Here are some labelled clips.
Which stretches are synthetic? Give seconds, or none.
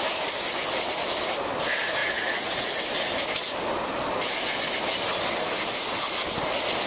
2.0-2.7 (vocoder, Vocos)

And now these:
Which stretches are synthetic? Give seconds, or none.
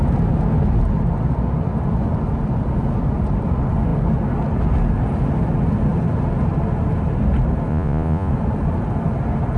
7.7-8.3 (vocoder, Vocos)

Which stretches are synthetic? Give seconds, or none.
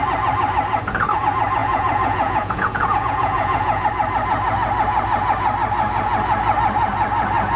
1.6-3.9 (vocoder, Vocos)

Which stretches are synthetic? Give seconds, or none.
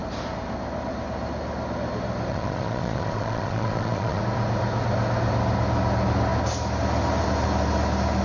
2.3-4.2 (vocoder, Vocos)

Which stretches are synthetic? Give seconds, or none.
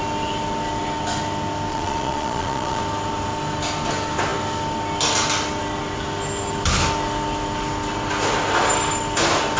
1.7-2.8 (vocoder, Vocos)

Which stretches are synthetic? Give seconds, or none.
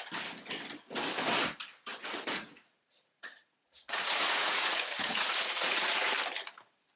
2.0-6.1 (vocoder, Vocos)